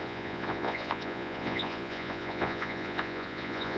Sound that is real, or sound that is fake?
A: fake